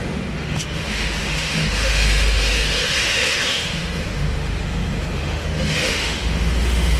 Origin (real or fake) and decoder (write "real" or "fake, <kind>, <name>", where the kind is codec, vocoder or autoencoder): fake, autoencoder, DAC-VAE